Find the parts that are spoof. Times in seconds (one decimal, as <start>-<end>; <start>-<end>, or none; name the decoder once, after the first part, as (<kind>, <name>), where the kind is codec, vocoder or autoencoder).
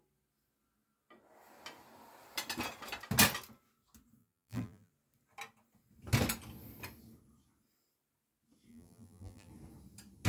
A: 4.2-4.9 (vocoder, BigVGAN v2); 8.7-9.5